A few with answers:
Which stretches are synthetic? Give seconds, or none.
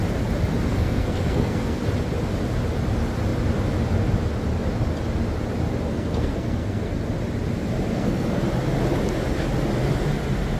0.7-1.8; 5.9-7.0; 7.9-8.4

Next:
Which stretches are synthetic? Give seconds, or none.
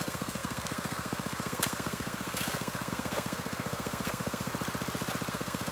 0.0-4.5; 5.3-5.7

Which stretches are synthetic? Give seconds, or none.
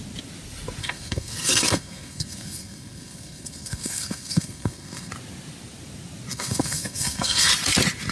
0.8-5.1; 6.3-7.5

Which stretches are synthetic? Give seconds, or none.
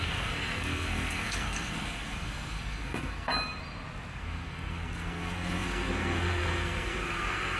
0.0-3.3; 4.1-7.6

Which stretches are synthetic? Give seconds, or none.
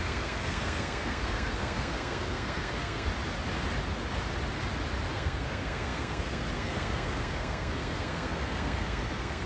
0.0-3.1; 5.1-9.5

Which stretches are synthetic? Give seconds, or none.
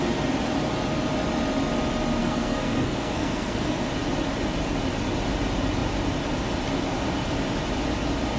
2.2-3.8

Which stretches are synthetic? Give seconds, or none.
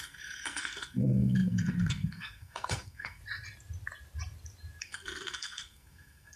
0.0-3.2; 4.8-6.4